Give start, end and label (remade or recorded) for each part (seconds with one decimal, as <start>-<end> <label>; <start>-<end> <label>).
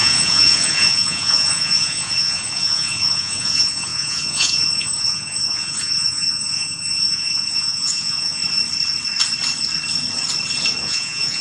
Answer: 0.0-8.4 remade; 8.4-10.8 recorded; 10.8-11.4 remade